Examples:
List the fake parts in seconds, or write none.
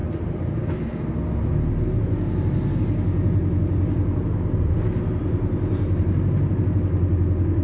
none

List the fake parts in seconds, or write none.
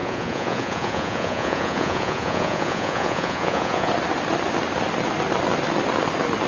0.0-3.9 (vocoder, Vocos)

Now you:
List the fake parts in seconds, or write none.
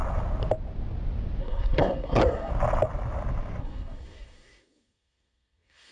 1.4-2.5 (codec, SNAC); 3.6-5.9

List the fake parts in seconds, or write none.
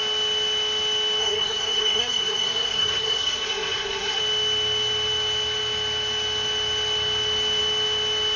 1.2-4.2 (codec, SNAC)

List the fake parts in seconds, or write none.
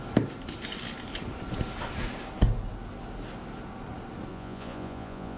4.3-5.4 (vocoder, Vocos)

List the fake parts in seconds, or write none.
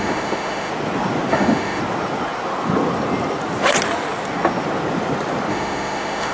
0.0-0.7 (autoencoder, DAC-VAE); 1.3-1.8; 5.5-6.3